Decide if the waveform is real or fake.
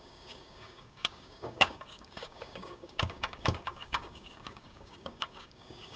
fake